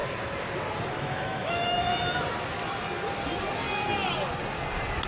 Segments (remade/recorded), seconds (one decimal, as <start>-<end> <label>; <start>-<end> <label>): 0.0-0.9 recorded; 0.9-1.9 remade; 1.9-5.1 recorded